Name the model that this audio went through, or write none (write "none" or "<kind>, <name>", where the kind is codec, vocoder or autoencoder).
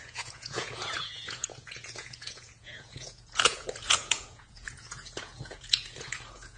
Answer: vocoder, Vocos